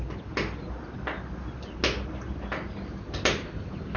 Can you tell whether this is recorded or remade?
recorded